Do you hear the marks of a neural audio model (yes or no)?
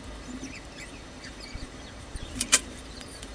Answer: yes